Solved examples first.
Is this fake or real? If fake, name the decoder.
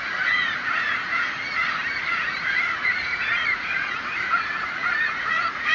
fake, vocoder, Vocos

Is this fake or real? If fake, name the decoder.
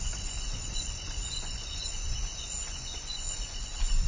fake, vocoder, Vocos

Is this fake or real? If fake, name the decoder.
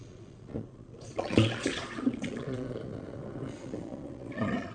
fake, vocoder, Vocos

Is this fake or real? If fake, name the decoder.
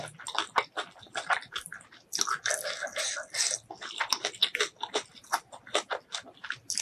real